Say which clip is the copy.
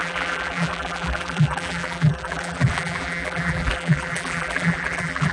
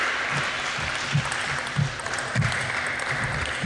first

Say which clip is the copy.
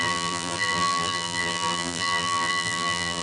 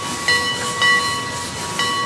first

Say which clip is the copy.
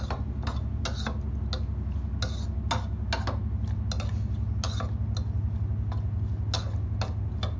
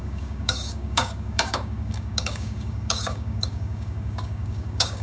second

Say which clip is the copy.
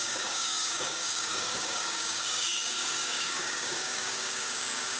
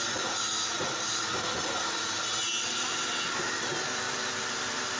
first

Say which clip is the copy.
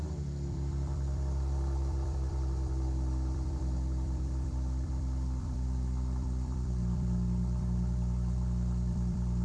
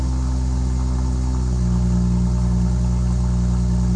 first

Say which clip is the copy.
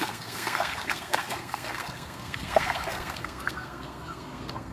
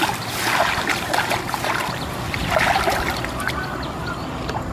first